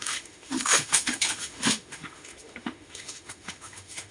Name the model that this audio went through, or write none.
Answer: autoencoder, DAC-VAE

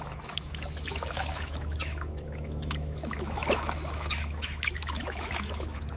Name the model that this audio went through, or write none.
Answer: autoencoder, DAC-VAE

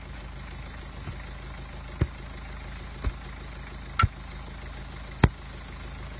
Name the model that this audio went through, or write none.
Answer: none